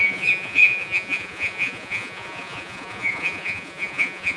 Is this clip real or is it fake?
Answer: fake